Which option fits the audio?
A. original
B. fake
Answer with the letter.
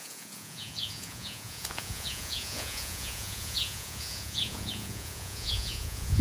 B